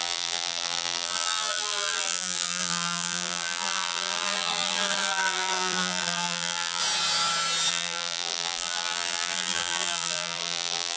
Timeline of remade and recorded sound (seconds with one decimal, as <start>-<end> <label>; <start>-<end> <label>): 0.0-6.8 remade; 6.8-7.7 recorded; 7.7-11.0 remade